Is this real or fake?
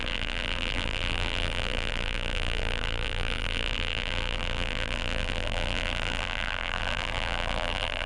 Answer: fake